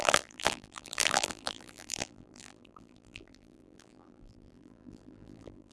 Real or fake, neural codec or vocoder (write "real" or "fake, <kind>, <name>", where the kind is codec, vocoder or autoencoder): fake, vocoder, BigVGAN v2